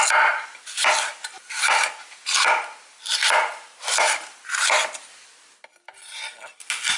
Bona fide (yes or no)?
yes